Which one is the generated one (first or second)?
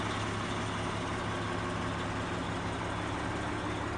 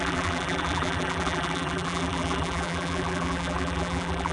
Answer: second